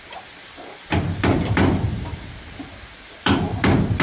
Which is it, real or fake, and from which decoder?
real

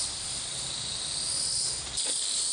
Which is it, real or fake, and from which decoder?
real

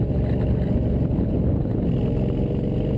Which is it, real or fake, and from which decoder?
real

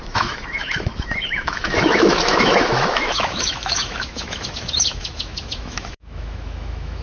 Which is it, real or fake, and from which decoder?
fake, autoencoder, DAC-VAE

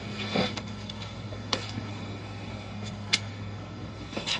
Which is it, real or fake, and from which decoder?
fake, codec, SNAC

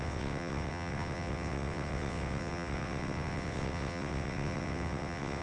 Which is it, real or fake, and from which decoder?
fake, vocoder, WaveNeXt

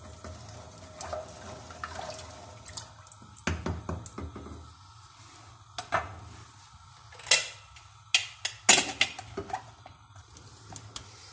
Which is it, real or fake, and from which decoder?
real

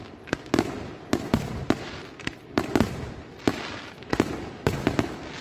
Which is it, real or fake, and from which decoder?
real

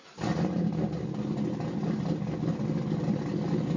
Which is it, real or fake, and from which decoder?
real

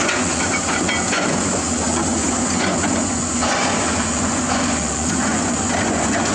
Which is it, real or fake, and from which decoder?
fake, vocoder, Vocos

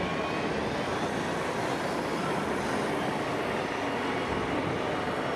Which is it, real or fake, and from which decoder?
real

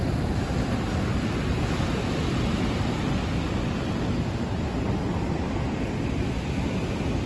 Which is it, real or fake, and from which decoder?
real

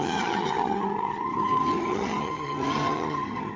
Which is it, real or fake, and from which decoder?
fake, vocoder, HiFi-GAN